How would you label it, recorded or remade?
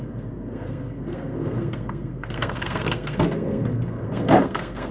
remade